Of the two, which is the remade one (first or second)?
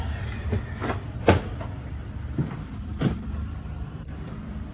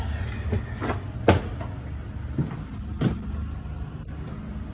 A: first